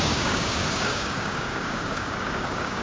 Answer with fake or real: fake